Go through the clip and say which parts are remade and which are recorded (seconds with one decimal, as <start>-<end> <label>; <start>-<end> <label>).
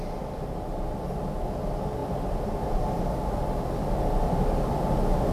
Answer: 0.0-2.0 recorded; 2.0-3.0 remade; 3.0-5.3 recorded